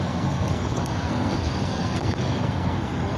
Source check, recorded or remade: remade